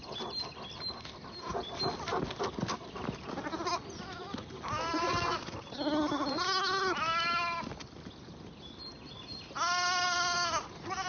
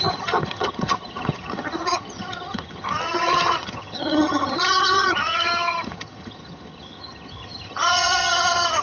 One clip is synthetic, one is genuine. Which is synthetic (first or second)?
second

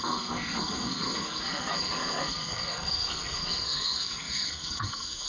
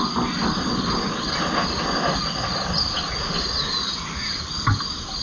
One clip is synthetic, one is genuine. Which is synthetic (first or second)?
first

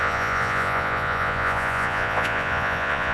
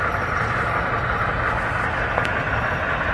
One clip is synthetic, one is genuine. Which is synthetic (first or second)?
first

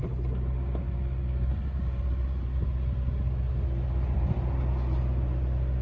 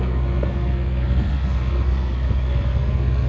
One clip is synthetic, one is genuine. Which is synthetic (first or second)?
second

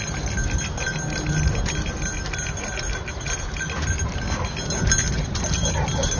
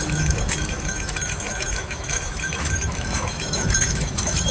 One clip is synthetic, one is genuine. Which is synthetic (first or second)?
second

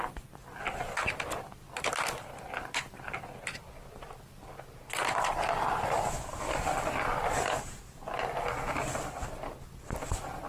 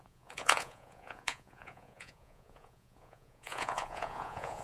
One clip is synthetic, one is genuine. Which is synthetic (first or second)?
second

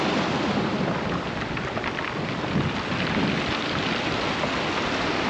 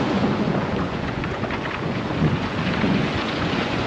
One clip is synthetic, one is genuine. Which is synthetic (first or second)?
second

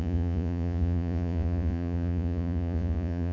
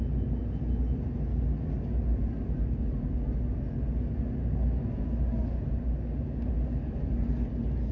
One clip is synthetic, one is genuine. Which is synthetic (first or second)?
first